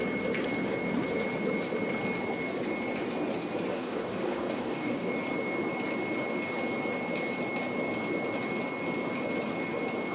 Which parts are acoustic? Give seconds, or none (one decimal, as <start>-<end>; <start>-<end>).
0.0-3.7; 5.1-10.1